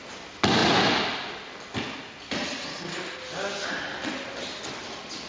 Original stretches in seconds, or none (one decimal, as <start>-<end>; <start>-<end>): 0.0-5.3